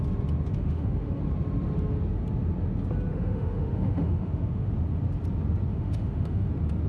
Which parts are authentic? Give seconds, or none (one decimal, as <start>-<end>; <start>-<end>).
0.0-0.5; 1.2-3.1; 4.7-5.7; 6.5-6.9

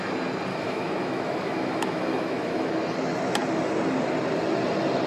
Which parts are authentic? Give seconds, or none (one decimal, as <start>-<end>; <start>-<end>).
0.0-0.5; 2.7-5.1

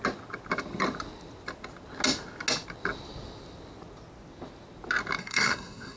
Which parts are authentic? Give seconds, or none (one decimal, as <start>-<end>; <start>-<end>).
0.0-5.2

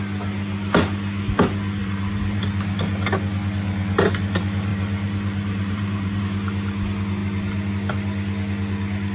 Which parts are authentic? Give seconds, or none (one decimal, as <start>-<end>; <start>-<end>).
0.0-1.8; 2.4-4.7; 6.2-9.1